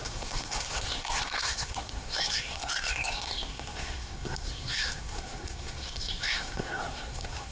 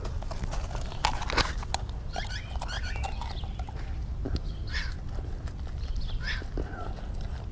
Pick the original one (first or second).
second